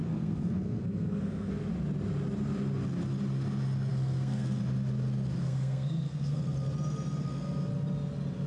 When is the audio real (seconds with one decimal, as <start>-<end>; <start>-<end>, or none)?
1.5-3.9; 4.6-5.4; 6.4-8.5